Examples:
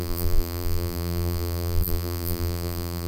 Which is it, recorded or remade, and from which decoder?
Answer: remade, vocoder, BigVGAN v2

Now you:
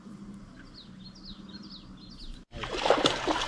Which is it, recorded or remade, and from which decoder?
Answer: recorded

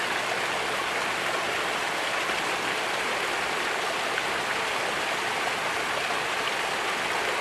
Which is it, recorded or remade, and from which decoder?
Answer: recorded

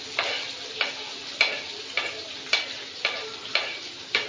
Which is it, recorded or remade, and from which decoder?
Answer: recorded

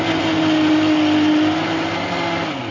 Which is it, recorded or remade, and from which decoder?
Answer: recorded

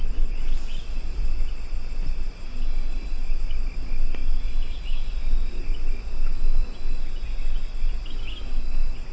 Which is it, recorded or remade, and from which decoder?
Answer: recorded